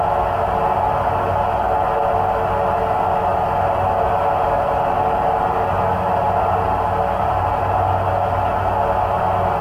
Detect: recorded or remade recorded